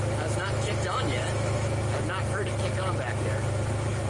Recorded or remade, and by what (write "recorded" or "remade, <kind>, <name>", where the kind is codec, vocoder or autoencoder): recorded